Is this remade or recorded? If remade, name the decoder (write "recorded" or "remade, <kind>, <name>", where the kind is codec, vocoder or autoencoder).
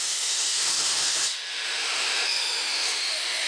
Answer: remade, autoencoder, DAC-VAE